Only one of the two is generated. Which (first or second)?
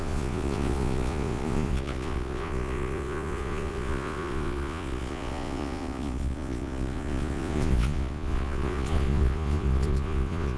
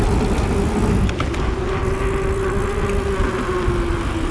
first